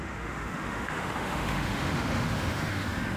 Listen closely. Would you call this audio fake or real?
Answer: fake